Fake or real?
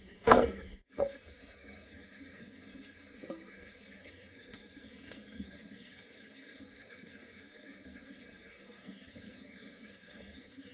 fake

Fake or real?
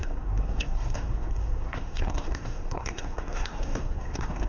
fake